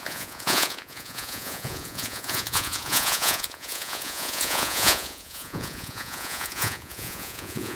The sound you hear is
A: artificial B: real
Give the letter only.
A